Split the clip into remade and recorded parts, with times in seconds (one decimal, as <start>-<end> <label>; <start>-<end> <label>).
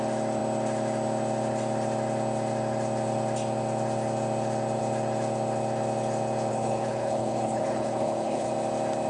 0.0-6.5 recorded; 6.5-8.5 remade; 8.5-9.1 recorded